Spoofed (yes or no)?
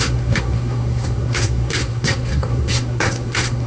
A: yes